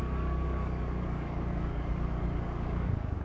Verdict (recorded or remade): remade